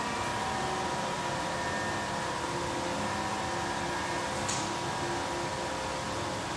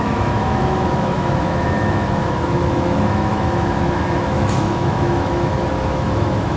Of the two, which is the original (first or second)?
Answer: first